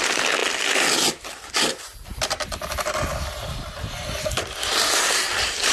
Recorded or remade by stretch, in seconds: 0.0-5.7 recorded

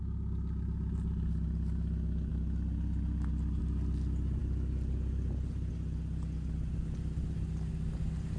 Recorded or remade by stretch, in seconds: 0.0-8.4 recorded

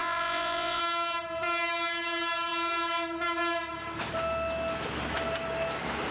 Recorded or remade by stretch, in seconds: 0.0-0.8 remade; 0.8-6.1 recorded